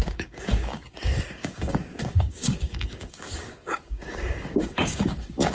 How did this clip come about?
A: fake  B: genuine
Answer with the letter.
A